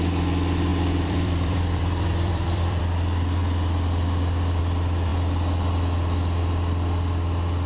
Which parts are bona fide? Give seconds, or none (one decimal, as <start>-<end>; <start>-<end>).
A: 0.0-0.7; 2.8-7.7